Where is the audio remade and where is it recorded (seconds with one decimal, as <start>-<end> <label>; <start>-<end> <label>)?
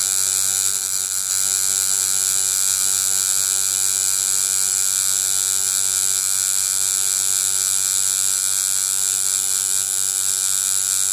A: 0.0-0.7 recorded; 0.7-1.3 remade; 1.3-11.1 recorded